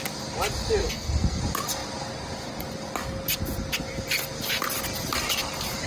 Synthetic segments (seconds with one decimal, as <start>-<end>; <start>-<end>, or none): 0.8-1.4